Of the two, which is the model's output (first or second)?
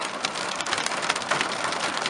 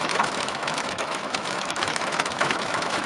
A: second